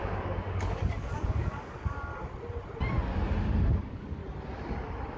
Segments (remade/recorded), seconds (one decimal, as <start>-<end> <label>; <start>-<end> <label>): 0.0-2.1 remade; 2.1-3.4 recorded; 3.4-4.2 remade; 4.2-5.2 recorded